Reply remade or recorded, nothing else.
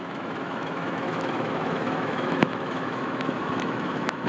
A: remade